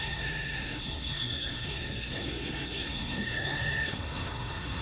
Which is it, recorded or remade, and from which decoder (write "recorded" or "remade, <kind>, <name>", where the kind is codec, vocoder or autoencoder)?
remade, codec, SNAC